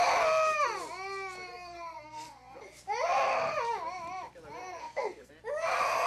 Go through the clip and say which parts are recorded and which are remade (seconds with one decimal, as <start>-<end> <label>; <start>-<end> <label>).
0.0-1.5 recorded; 1.5-2.6 remade; 2.6-4.6 recorded; 4.6-5.3 remade; 5.3-6.1 recorded